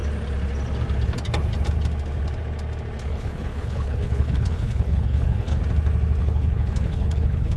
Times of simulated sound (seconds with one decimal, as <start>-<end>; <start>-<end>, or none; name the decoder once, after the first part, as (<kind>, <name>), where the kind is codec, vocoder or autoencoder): 3.1-5.6 (codec, HILCodec); 6.2-7.6